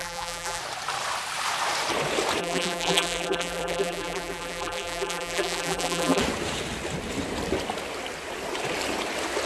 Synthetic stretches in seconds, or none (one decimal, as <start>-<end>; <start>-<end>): 0.0-0.6; 2.4-6.2